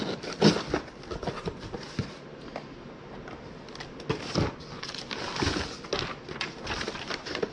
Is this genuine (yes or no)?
yes